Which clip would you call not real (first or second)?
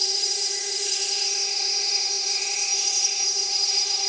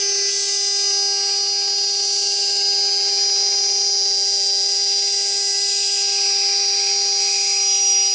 first